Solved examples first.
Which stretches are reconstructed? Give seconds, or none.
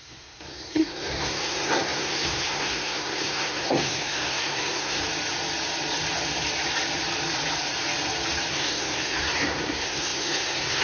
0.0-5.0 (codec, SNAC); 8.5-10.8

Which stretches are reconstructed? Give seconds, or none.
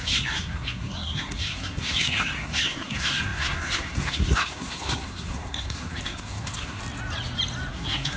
0.0-6.8 (codec, SNAC); 7.7-8.2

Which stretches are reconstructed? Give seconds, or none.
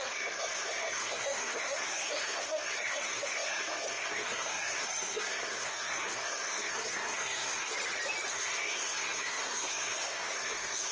0.0-7.7 (codec, SNAC); 8.3-10.9